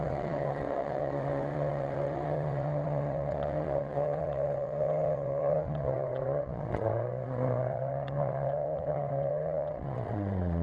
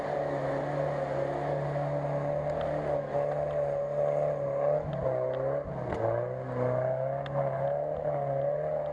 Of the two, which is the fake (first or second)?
first